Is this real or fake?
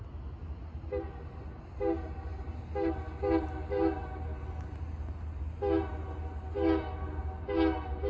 real